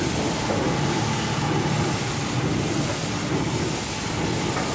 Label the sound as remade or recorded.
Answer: recorded